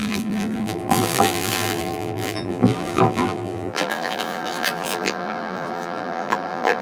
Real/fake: fake